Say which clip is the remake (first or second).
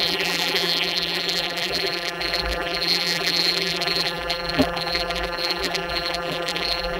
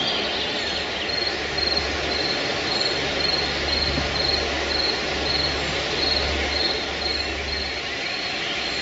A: first